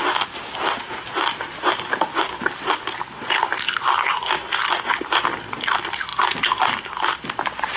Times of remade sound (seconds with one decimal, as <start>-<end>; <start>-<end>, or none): none